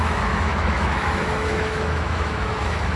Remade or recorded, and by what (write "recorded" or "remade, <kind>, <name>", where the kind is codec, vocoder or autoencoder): remade, autoencoder, DAC-VAE